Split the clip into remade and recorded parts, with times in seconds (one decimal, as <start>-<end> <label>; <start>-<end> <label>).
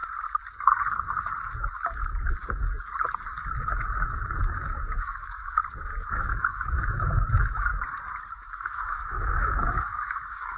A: 0.0-4.4 recorded; 4.4-5.6 remade; 5.6-6.1 recorded; 6.1-7.7 remade; 7.7-8.3 recorded; 8.3-10.6 remade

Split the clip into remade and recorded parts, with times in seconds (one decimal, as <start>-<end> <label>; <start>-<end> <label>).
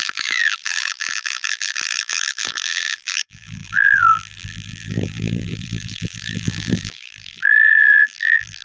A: 0.0-8.6 remade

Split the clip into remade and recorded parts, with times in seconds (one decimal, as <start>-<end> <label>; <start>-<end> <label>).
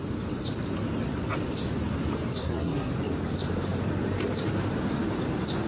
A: 0.0-2.4 recorded; 2.4-2.9 remade; 2.9-5.7 recorded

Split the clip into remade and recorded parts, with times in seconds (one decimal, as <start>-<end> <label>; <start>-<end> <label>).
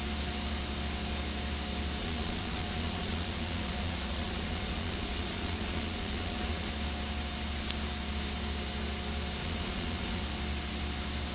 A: 0.0-2.0 recorded; 2.0-6.7 remade; 6.7-9.4 recorded; 9.4-10.2 remade; 10.2-11.3 recorded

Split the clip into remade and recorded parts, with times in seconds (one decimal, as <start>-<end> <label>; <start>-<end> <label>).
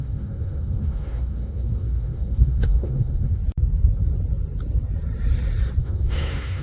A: 0.0-3.4 remade; 3.4-5.8 recorded; 5.8-6.6 remade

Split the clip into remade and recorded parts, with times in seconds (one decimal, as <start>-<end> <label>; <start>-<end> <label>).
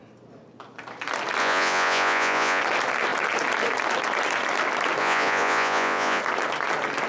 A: 0.0-1.4 recorded; 1.4-2.6 remade; 2.6-5.0 recorded; 5.0-6.2 remade; 6.2-7.1 recorded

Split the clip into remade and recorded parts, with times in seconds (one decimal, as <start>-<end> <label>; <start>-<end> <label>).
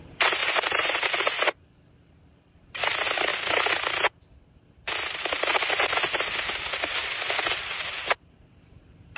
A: 0.0-3.3 remade; 3.3-6.8 recorded; 6.8-9.2 remade